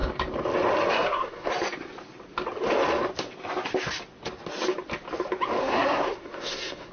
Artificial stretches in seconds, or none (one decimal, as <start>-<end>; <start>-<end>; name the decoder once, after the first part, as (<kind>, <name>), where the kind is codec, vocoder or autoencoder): 0.9-1.5 (codec, SNAC); 5.6-6.9